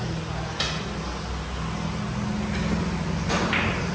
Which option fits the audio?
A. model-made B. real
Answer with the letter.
B